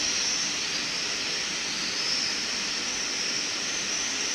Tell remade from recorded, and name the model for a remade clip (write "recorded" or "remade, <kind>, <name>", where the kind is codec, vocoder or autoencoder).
recorded